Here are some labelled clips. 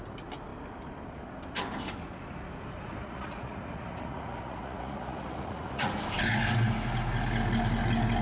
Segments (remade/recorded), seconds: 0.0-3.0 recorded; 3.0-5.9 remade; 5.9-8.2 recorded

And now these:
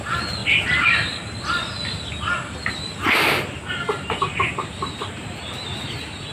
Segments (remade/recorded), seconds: 0.0-6.3 recorded

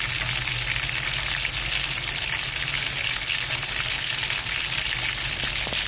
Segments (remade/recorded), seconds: 0.0-5.9 recorded

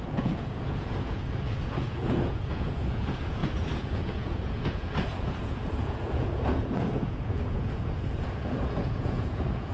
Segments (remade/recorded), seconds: 0.0-9.7 remade

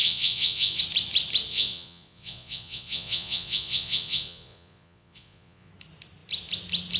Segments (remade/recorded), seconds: 0.0-0.8 remade; 0.8-1.5 recorded; 1.5-5.7 remade; 5.7-7.0 recorded